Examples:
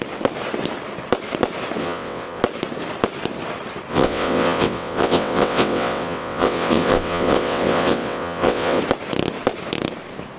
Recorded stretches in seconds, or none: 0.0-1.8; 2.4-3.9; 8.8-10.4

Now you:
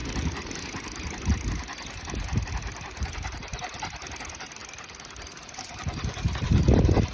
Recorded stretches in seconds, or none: 0.0-7.1

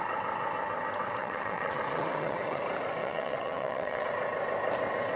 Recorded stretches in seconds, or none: 0.0-1.2; 2.6-3.0; 4.1-5.2